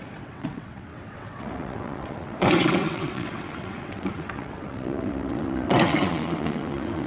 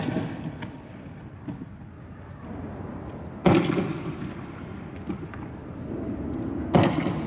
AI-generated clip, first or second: first